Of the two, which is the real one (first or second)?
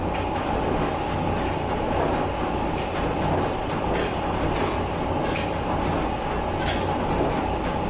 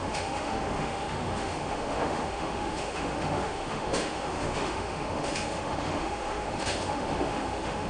first